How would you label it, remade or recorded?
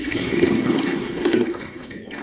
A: remade